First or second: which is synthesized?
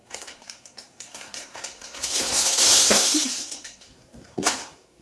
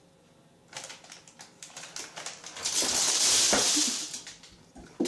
first